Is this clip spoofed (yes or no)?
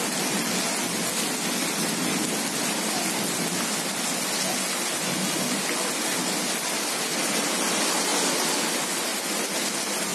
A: no